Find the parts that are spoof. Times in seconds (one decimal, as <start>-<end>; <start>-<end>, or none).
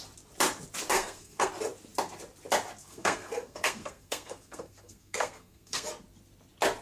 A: 0.9-1.5; 2.8-5.9